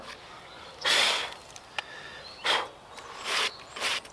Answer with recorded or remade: recorded